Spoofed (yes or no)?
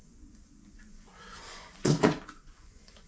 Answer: yes